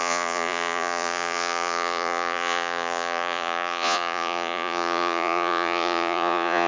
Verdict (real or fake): fake